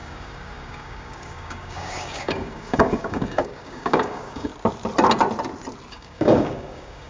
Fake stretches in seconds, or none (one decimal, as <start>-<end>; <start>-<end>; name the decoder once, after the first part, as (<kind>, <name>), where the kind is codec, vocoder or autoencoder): 0.0-4.5 (codec, DAC); 5.9-7.1